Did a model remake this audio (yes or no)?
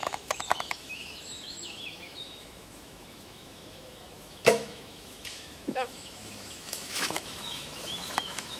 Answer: yes